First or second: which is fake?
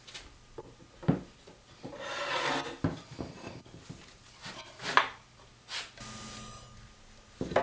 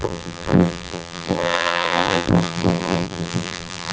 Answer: second